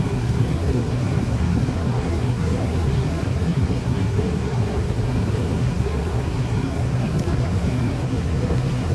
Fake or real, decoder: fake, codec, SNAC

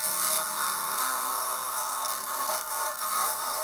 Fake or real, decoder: fake, codec, SNAC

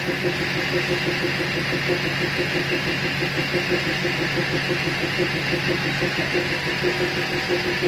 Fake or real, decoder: real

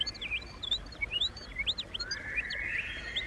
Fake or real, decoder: real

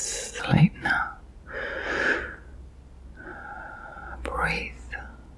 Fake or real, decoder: real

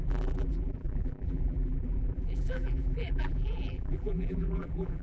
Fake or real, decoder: fake, vocoder, BigVGAN v2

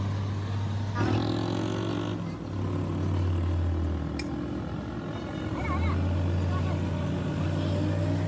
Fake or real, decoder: real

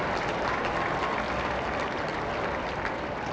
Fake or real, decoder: real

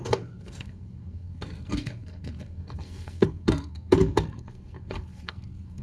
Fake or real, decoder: fake, codec, SNAC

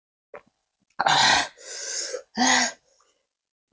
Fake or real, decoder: real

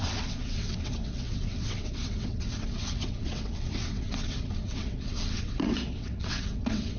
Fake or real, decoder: fake, vocoder, WaveNeXt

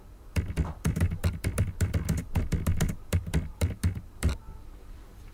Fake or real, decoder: fake, vocoder, BigVGAN v2